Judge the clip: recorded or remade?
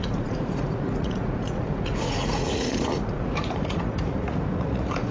remade